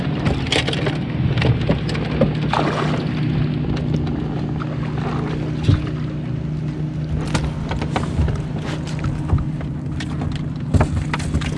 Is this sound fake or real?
real